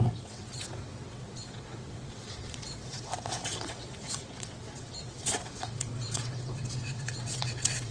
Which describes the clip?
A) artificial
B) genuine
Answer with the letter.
A